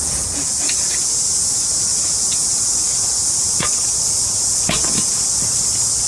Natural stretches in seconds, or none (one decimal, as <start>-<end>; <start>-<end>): none